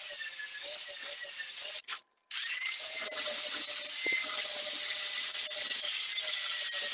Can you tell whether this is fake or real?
fake